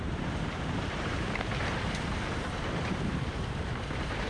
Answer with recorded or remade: remade